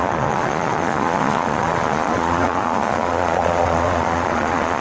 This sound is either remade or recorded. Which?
remade